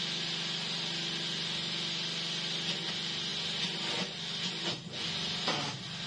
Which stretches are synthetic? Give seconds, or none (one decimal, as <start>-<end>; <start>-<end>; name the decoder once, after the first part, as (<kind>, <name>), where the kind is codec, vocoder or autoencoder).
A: none